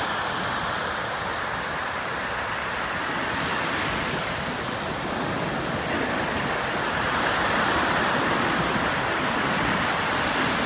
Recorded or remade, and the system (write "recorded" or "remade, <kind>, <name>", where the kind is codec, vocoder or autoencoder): recorded